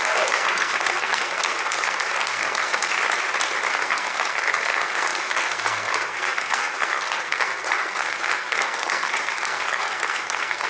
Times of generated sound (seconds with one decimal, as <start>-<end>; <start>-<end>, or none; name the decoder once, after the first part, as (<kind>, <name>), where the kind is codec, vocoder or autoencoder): 0.0-2.9 (codec, SNAC); 3.7-10.7

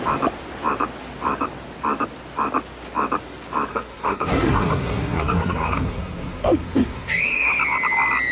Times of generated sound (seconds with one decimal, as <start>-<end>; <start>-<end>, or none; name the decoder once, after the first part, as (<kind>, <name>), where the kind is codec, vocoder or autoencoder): 3.7-7.5 (codec, SNAC)

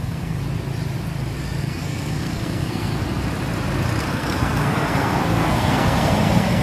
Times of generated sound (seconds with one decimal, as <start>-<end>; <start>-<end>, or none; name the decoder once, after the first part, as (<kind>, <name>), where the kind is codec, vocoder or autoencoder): 0.0-0.4 (codec, SNAC); 1.6-3.0; 4.0-6.6

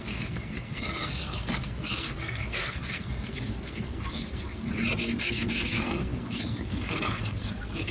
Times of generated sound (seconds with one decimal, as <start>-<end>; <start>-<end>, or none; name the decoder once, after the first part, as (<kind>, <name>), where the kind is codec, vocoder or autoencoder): 0.0-4.7 (codec, SNAC); 5.2-7.9

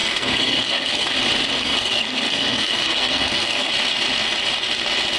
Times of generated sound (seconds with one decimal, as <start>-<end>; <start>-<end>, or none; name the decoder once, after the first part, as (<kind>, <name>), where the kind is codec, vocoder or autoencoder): 0.0-1.1 (codec, SNAC); 1.6-3.7

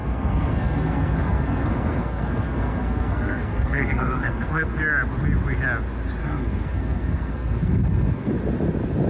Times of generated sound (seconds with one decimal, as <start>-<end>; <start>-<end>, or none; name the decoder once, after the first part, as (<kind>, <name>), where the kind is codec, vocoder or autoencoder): 0.0-4.8 (codec, SNAC); 6.2-8.3

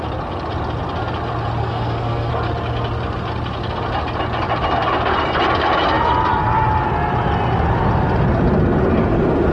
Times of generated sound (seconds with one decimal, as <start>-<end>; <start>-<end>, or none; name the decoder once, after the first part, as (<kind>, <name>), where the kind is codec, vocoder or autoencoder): 1.6-2.3 (codec, SNAC)

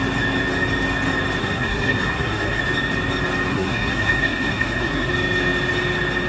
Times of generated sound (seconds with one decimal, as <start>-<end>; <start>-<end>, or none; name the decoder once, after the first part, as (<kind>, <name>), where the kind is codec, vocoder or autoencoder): 1.4-2.6 (codec, SNAC); 3.5-5.1